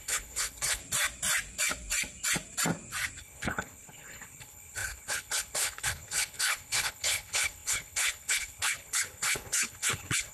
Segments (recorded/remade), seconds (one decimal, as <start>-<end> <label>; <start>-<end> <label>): 0.0-0.8 remade; 0.8-3.2 recorded; 3.2-10.3 remade

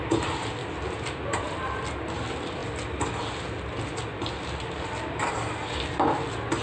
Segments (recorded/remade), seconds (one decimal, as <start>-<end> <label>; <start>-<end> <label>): 0.0-6.6 recorded

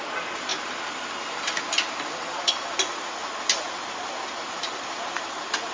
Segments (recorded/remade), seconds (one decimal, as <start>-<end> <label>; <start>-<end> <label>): 0.0-5.7 recorded

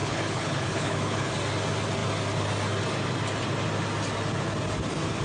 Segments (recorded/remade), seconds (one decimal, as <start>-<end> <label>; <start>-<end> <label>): 0.0-1.3 remade; 1.3-5.2 recorded

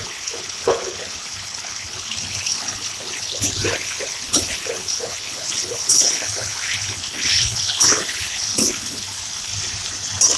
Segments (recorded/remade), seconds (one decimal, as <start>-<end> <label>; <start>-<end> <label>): 0.0-9.5 remade; 9.5-10.4 recorded

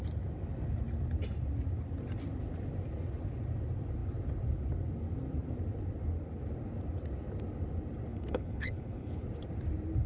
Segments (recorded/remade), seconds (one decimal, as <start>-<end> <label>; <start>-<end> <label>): 0.0-8.1 recorded; 8.1-9.2 remade; 9.2-10.1 recorded

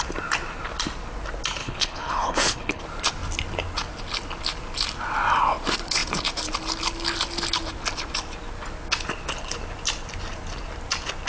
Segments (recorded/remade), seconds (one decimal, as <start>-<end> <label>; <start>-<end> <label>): 0.0-1.6 recorded; 1.6-2.8 remade; 2.8-11.3 recorded

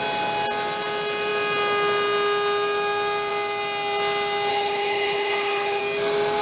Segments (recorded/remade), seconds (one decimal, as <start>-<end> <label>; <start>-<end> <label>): 0.0-4.5 recorded; 4.5-5.8 remade; 5.8-6.4 recorded